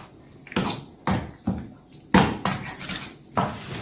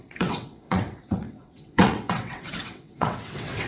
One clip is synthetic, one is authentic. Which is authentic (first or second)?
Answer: first